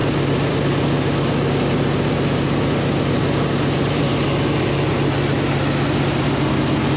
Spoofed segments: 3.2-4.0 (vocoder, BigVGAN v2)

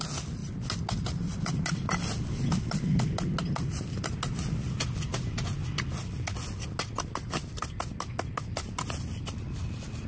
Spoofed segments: none